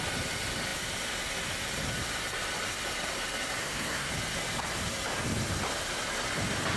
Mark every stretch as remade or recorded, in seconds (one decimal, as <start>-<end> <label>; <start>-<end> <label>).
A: 0.0-3.6 recorded; 3.6-4.1 remade; 4.1-6.8 recorded